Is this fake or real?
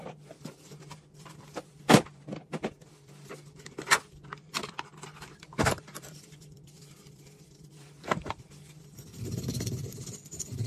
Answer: fake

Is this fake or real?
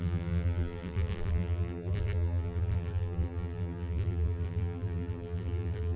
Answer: fake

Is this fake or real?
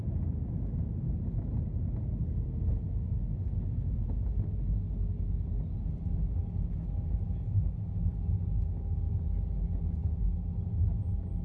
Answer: real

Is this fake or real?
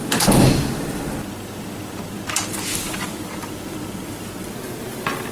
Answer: real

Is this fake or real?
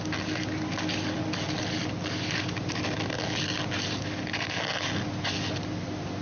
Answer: real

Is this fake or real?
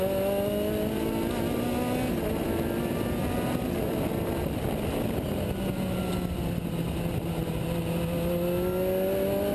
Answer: real